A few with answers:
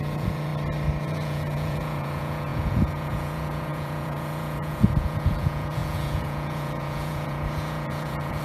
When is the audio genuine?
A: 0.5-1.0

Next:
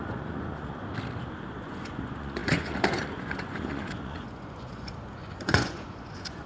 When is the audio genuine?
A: 0.8-1.5